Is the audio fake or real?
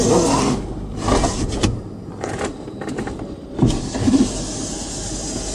real